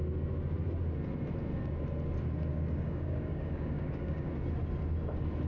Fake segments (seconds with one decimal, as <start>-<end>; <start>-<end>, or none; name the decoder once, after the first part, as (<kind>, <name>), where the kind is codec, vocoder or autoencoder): 2.5-4.3 (codec, DAC)